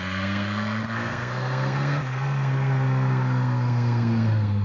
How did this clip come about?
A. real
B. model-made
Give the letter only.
B